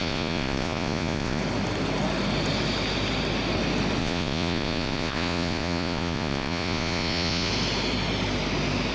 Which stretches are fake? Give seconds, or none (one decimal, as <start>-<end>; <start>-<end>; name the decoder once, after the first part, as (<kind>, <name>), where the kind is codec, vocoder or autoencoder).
0.0-1.4 (vocoder, Vocos); 4.0-7.5